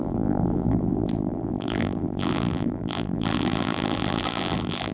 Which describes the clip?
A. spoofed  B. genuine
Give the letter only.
A